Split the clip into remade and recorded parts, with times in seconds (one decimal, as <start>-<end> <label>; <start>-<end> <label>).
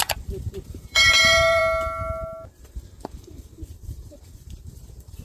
0.0-1.6 remade; 1.6-2.5 recorded; 2.5-5.2 remade